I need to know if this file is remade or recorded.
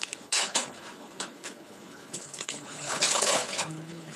remade